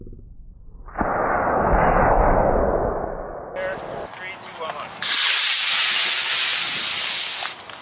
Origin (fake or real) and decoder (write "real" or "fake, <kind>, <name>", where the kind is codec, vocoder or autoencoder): real